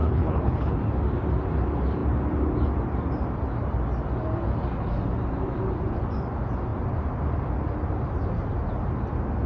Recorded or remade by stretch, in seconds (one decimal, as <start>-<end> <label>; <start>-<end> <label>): 0.0-0.7 remade; 0.7-9.5 recorded